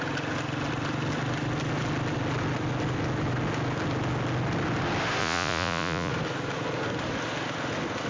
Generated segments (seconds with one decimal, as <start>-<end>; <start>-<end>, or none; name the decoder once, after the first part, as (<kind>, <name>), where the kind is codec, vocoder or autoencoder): 5.2-6.1 (vocoder, Vocos)